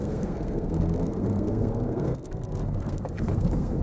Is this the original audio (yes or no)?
no